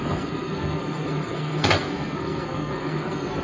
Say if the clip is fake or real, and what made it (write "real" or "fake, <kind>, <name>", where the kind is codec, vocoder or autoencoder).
fake, codec, SNAC